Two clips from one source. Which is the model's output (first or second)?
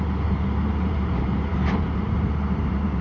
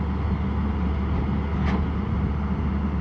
first